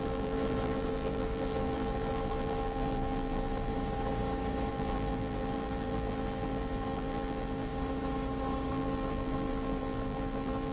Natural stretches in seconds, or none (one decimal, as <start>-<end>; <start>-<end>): 3.7-4.7; 7.7-8.7